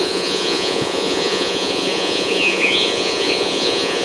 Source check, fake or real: fake